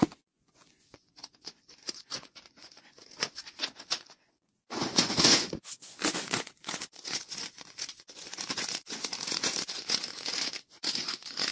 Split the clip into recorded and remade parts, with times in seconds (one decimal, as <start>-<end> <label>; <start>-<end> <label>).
0.0-11.5 remade